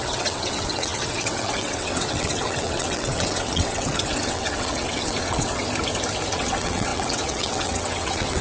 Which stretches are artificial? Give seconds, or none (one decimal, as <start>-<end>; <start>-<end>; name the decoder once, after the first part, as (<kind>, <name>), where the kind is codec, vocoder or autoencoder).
0.0-5.6 (vocoder, WaveNeXt); 6.3-8.4